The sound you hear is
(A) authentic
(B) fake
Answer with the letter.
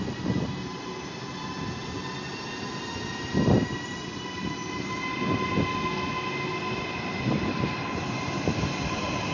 A